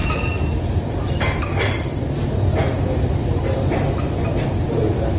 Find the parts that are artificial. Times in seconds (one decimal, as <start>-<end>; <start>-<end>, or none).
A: 0.0-3.1